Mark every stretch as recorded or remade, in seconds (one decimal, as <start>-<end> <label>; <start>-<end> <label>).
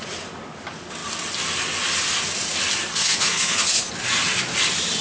0.0-2.9 recorded; 2.9-3.9 remade; 3.9-5.0 recorded